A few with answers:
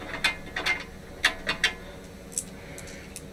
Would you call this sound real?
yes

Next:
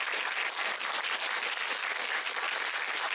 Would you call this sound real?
yes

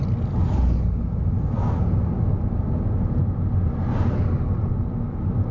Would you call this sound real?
yes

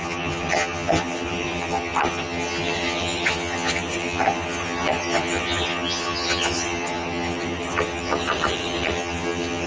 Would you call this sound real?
no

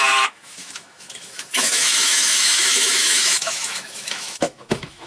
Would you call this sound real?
no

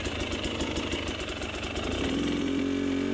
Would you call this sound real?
yes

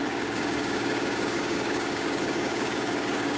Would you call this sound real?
no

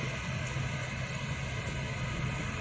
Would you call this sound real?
yes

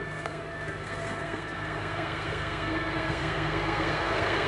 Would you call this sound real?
no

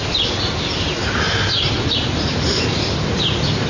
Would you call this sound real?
yes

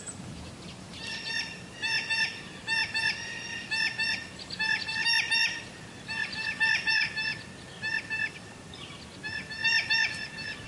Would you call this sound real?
yes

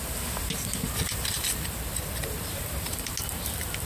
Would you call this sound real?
yes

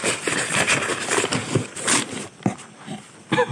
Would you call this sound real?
yes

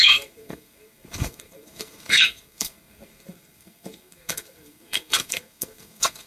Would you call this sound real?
no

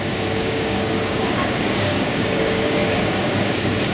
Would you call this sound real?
no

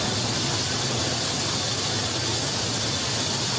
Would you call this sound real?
yes